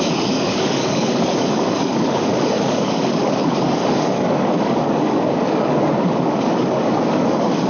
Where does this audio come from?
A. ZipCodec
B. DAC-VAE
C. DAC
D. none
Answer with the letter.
C